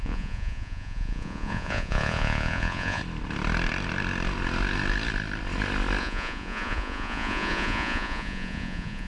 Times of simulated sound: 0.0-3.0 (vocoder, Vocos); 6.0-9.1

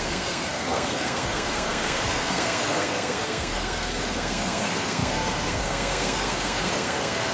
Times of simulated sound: 0.0-7.3 (codec, SNAC)

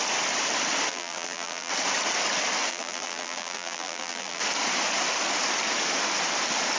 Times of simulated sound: 0.9-1.7 (vocoder, BigVGAN v2); 2.7-4.4

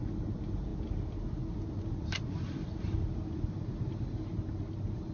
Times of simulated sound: none

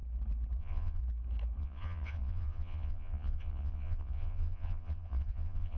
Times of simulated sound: 0.6-1.0 (vocoder, Vocos); 1.6-5.8

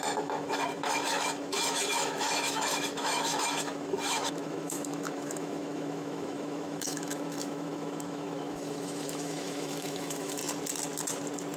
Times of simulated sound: 0.0-10.4 (autoencoder, DAC-VAE)

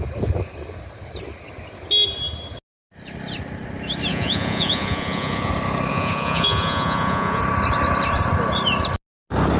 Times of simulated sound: 4.1-5.5 (vocoder, Vocos); 5.9-7.4